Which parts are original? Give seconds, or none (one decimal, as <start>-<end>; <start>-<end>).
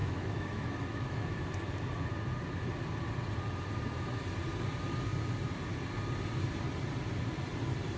1.5-8.0